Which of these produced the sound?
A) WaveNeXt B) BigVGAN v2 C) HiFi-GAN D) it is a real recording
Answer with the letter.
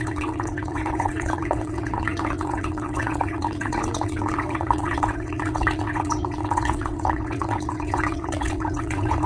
A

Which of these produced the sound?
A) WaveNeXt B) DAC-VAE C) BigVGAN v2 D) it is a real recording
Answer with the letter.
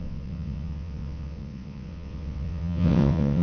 A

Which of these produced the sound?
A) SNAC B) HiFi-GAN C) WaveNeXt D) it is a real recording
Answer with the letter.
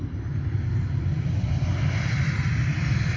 D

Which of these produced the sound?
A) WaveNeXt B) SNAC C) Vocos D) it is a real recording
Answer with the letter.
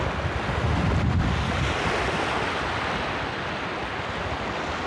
D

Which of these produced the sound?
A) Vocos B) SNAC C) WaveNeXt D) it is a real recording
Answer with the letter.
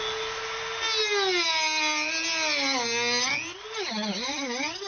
D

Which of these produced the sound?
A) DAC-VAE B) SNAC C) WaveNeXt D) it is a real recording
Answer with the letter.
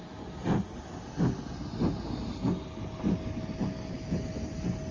D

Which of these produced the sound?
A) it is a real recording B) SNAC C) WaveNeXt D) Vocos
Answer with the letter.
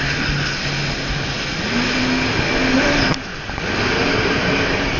A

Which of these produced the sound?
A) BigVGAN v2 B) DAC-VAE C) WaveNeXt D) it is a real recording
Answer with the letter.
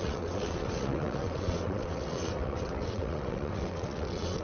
C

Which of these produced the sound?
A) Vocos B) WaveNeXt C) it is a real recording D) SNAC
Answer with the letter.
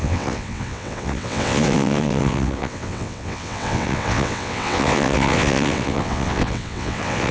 B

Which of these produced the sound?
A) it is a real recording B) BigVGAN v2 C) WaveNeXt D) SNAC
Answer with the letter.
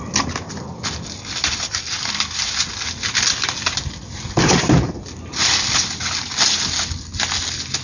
A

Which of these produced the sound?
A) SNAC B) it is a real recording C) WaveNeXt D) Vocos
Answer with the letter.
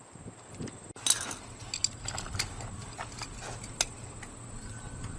B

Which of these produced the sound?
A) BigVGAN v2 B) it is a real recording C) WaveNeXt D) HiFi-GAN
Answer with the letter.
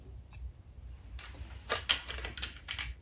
B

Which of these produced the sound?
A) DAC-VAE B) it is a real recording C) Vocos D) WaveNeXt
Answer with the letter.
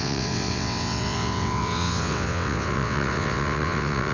D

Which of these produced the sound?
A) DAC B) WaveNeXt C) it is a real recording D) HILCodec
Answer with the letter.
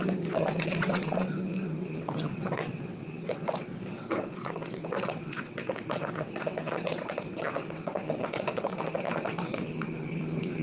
B